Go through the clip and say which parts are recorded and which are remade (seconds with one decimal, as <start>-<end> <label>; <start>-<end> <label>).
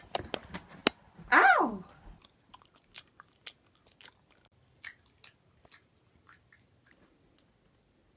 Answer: 0.0-8.2 recorded